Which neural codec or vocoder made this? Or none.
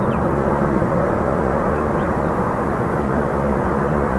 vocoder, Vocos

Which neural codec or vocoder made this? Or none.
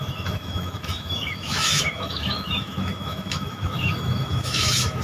autoencoder, DAC-VAE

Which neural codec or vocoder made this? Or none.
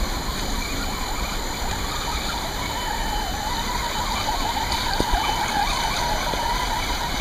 none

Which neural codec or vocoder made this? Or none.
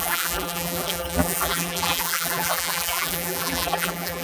vocoder, BigVGAN v2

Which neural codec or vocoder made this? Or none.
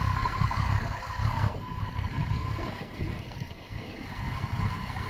codec, SNAC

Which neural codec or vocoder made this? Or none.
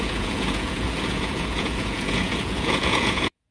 vocoder, Vocos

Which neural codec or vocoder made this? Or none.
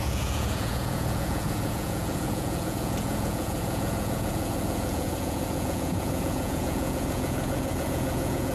vocoder, Vocos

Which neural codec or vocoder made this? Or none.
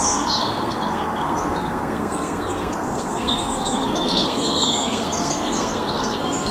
codec, SNAC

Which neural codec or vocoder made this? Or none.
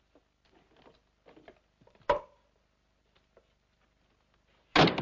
none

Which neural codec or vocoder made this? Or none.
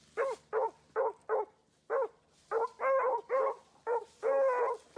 none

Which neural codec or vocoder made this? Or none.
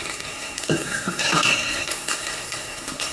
codec, SNAC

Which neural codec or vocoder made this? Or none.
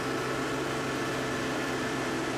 vocoder, BigVGAN v2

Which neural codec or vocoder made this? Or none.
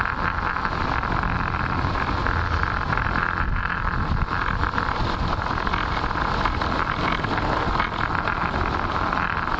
none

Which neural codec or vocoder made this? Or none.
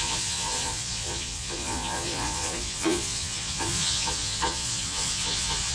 vocoder, Vocos